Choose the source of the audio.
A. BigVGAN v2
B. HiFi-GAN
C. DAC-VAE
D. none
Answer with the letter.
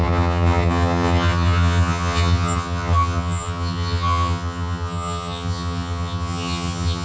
B